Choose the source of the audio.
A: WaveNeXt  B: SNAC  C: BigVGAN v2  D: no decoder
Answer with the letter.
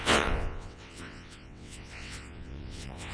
A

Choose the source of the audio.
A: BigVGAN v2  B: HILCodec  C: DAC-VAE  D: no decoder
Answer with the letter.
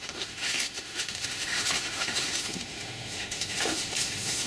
C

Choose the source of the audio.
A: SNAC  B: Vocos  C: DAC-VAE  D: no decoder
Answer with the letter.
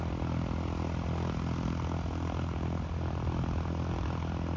D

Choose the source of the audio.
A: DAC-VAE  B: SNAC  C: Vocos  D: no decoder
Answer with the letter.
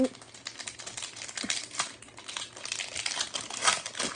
D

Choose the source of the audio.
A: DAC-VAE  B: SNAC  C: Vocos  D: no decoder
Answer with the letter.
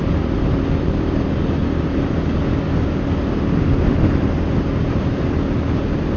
D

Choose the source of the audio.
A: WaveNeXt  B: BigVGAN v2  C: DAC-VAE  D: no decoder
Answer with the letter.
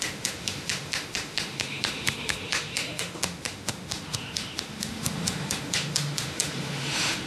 C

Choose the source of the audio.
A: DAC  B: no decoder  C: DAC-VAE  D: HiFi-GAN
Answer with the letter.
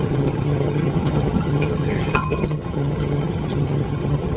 D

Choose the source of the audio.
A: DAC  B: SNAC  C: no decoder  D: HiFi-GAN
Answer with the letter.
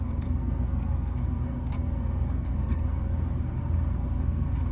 B